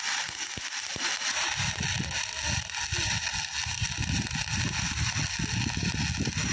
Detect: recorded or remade recorded